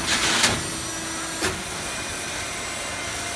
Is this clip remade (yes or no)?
no